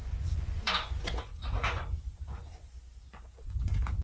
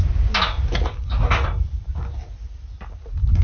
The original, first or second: second